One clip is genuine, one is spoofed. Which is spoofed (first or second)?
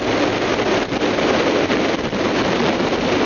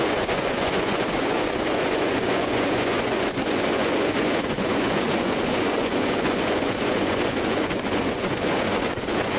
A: second